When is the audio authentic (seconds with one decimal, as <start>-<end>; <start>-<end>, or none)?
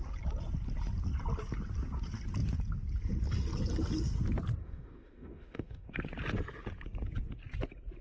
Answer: 0.0-4.6; 5.9-8.0